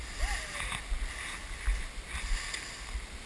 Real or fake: real